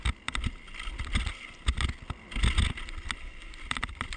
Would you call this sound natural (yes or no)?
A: yes